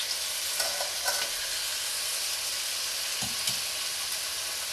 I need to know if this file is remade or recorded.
recorded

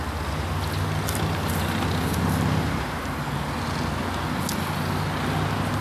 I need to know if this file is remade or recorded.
recorded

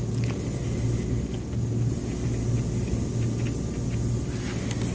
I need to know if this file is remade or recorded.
recorded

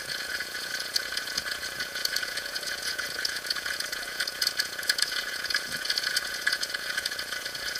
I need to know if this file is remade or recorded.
remade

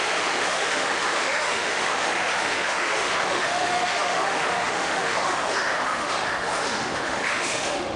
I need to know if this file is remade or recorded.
remade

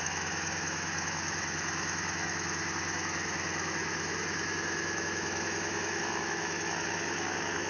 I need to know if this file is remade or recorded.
remade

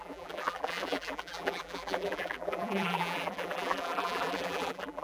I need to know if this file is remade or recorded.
remade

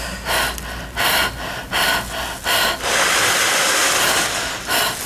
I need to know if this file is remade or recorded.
recorded